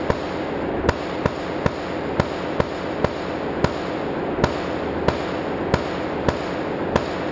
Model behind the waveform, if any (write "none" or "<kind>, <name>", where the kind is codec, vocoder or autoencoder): none